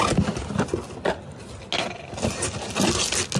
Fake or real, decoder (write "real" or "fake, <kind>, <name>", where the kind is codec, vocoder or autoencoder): real